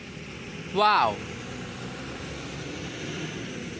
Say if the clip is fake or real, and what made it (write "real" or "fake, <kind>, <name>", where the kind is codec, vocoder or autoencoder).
real